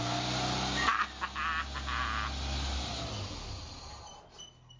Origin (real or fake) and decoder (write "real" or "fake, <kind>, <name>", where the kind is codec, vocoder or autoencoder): real